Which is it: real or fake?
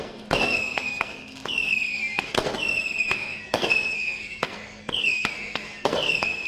fake